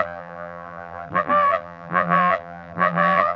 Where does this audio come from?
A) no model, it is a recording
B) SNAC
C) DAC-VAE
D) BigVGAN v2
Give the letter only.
D